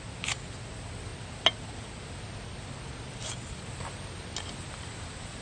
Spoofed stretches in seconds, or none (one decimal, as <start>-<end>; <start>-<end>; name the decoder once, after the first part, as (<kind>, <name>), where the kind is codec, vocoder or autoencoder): none